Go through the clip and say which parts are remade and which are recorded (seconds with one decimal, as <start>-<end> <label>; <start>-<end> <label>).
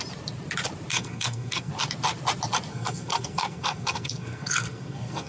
0.0-0.9 recorded; 0.9-1.7 remade; 1.7-2.7 recorded; 2.7-5.3 remade